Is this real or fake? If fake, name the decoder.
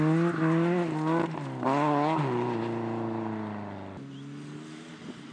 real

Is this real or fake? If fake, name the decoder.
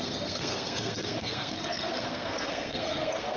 fake, codec, SNAC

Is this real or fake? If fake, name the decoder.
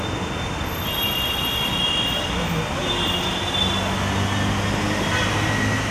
real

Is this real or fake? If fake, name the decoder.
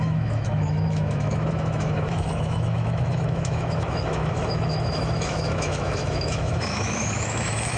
fake, autoencoder, DAC-VAE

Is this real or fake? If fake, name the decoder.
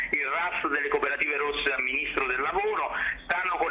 real